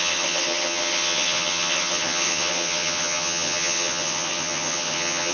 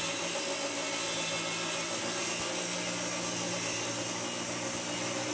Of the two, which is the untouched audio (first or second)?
second